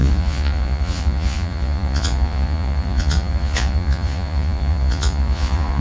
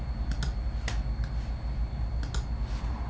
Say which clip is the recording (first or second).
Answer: second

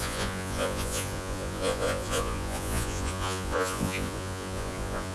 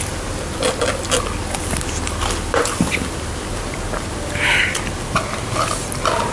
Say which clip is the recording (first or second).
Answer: second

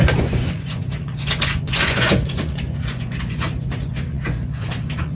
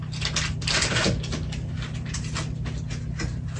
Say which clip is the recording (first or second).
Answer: second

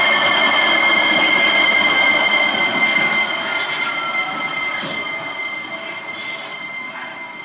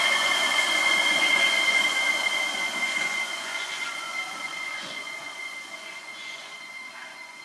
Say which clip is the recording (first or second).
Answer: first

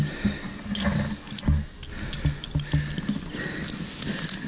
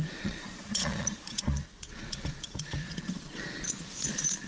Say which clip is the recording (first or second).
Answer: first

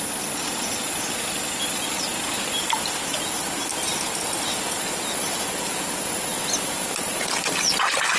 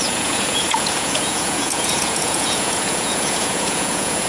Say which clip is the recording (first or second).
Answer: first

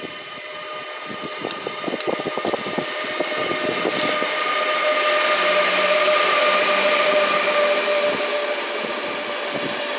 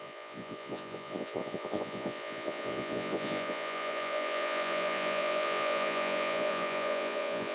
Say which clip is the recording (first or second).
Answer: first